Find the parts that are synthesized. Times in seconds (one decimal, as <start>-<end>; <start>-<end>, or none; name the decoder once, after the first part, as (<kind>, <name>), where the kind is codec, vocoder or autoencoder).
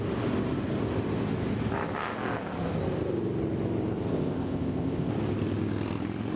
4.1-5.1 (codec, ZipCodec)